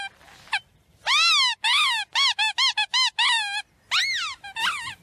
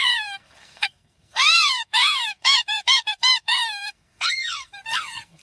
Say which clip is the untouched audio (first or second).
first